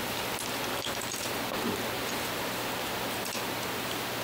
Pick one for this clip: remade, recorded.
recorded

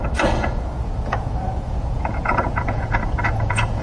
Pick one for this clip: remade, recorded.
remade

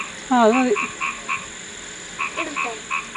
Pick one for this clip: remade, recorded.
recorded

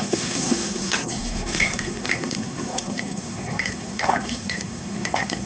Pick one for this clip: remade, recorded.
remade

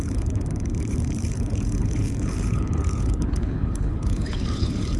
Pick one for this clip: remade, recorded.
remade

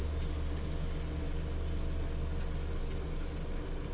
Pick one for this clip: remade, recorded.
recorded